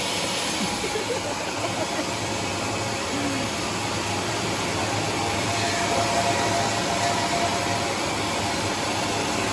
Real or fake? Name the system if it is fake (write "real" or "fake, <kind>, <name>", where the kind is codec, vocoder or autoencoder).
real